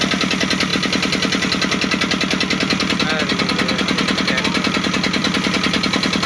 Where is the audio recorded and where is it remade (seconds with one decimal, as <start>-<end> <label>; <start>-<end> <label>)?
0.0-6.3 recorded